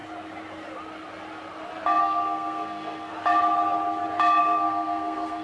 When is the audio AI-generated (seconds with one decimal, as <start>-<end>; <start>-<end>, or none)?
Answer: 2.0-3.1; 4.4-5.4